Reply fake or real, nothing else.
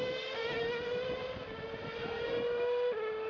real